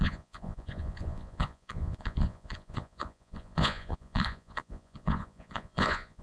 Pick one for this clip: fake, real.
fake